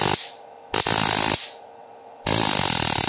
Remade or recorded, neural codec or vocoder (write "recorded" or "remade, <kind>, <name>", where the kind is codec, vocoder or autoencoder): recorded